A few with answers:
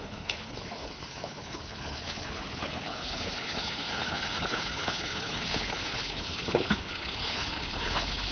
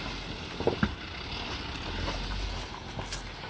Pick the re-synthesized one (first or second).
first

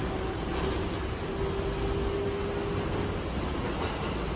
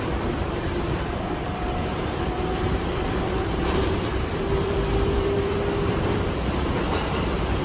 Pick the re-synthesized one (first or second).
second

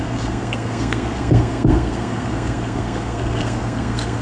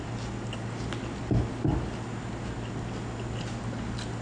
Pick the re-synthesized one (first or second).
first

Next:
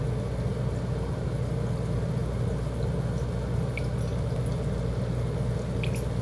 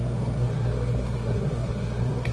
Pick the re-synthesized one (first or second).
second